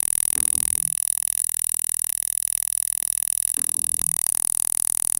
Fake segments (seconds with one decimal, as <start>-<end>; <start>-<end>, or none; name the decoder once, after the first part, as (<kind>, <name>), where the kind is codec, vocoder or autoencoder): 0.0-5.2 (autoencoder, DAC-VAE)